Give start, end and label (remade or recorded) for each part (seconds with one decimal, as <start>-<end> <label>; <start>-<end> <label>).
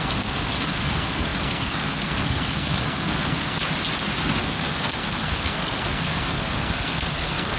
0.0-3.6 remade; 3.6-4.4 recorded; 4.4-7.6 remade